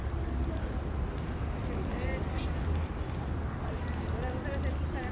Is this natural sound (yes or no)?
yes